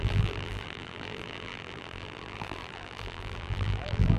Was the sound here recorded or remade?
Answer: remade